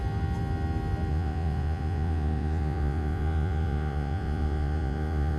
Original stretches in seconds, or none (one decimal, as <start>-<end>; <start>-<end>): 0.0-1.1